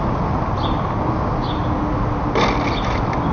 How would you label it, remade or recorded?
recorded